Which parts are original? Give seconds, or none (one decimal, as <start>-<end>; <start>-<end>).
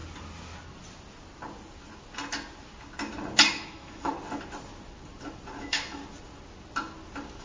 0.0-3.5; 4.1-5.6; 6.0-7.4